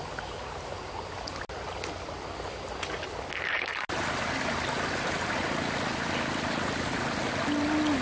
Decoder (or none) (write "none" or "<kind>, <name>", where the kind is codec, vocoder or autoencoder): none